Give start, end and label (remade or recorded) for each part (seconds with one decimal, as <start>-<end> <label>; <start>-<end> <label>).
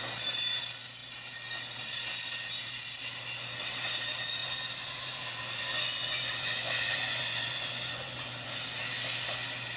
0.0-4.4 recorded; 4.4-8.8 remade; 8.8-9.8 recorded